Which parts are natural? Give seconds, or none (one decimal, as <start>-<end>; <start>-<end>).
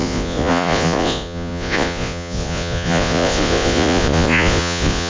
none